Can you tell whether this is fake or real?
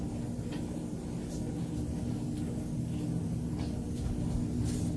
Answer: real